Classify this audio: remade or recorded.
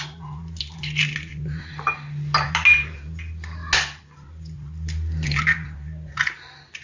recorded